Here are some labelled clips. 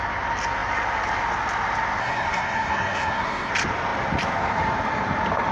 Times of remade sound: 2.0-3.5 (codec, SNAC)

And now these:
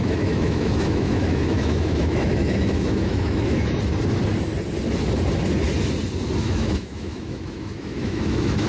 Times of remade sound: 0.0-3.8 (autoencoder, DAC-VAE); 6.4-8.7

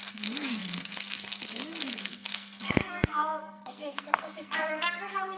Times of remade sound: 0.0-5.4 (codec, SNAC)

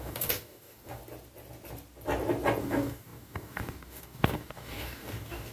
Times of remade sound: 0.0-1.0 (codec, DAC); 2.6-5.5

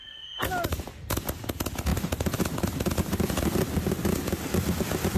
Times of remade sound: 0.0-0.5 (codec, SNAC)

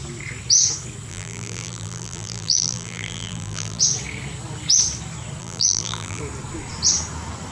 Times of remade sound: 1.1-3.8 (vocoder, BigVGAN v2); 5.4-6.2

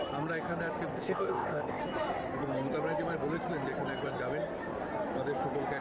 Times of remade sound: 0.9-1.8 (codec, ZipCodec)

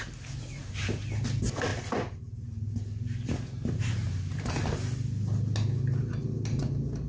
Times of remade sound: none